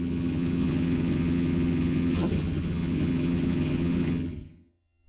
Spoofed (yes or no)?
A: yes